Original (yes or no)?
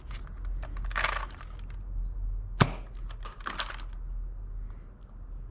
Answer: yes